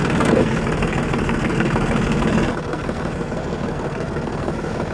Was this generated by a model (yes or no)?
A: yes